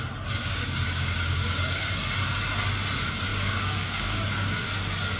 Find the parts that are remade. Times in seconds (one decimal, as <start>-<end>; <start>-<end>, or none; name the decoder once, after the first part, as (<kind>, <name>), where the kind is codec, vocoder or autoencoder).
0.4-1.9 (codec, DAC); 3.3-4.7